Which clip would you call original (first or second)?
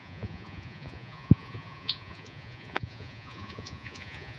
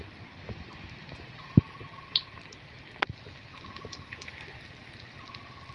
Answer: second